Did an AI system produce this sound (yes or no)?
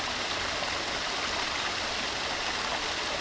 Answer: no